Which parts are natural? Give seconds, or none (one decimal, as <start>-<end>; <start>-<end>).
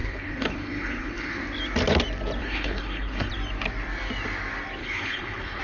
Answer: 1.4-2.4; 3.3-4.8